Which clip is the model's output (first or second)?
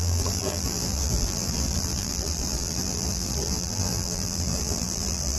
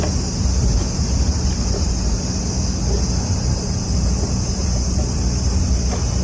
first